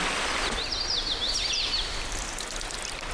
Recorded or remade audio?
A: recorded